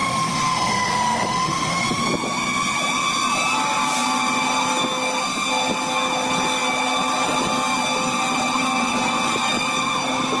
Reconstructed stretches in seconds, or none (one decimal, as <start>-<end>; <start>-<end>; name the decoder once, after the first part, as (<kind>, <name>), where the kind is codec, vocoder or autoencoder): 0.0-2.0 (autoencoder, DAC-VAE)